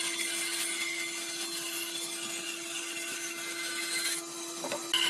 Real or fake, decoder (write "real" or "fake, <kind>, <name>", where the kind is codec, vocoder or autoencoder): real